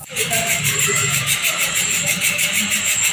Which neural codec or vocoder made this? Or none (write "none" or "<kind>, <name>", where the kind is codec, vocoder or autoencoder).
codec, DAC